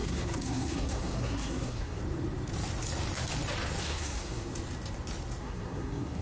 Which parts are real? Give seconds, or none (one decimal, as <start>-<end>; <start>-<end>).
2.0-3.8; 4.5-5.4